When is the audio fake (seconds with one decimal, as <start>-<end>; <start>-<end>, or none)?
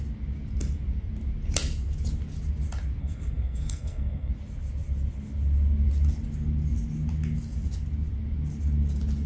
3.0-4.3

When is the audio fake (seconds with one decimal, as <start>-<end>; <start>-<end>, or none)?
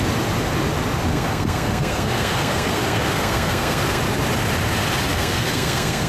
1.1-4.0; 5.1-6.1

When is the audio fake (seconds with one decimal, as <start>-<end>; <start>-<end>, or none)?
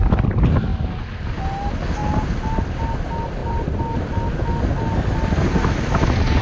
none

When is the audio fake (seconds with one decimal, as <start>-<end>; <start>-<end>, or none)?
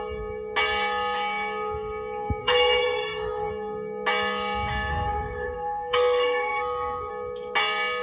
2.4-3.5; 4.9-7.1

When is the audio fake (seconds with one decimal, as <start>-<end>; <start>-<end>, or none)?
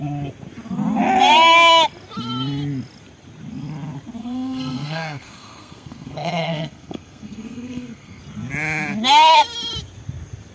4.2-8.2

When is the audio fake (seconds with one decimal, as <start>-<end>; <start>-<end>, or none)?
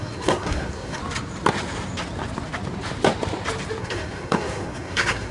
0.0-1.0; 3.8-5.3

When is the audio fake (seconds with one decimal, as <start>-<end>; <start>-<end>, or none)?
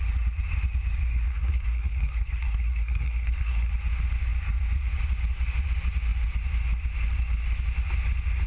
1.1-3.7